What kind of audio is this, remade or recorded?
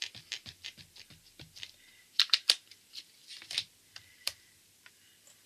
remade